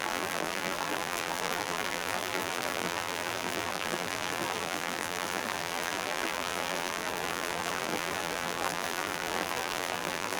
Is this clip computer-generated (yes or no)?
yes